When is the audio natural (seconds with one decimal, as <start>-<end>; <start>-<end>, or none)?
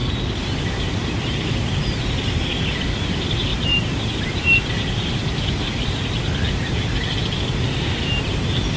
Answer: none